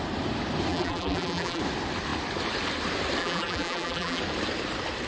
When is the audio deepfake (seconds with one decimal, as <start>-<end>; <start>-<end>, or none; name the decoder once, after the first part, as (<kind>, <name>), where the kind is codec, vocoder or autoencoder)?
0.7-1.6 (vocoder, BigVGAN v2); 3.2-4.2